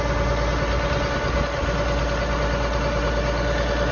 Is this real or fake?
real